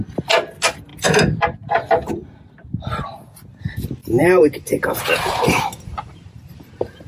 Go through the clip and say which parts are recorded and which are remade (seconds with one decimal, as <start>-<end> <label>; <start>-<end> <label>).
0.0-4.0 recorded; 4.0-7.1 remade